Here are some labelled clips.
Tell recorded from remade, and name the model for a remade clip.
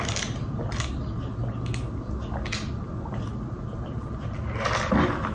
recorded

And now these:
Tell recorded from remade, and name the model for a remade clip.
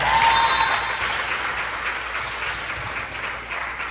recorded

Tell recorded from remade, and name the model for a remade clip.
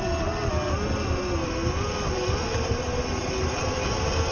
recorded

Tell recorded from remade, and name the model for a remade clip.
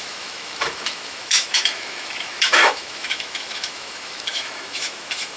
remade, autoencoder, DAC-VAE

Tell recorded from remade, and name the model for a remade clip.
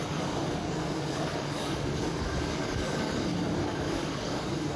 remade, codec, DAC